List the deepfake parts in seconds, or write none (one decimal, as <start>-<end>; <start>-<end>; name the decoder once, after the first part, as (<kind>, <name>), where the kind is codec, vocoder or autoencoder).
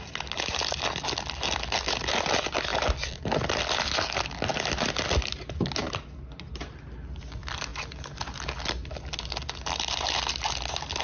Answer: none